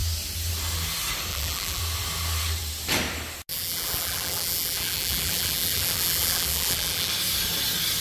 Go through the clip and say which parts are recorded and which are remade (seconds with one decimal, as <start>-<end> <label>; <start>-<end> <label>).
0.0-1.3 recorded; 1.3-1.8 remade; 1.8-3.5 recorded; 3.5-7.1 remade; 7.1-8.0 recorded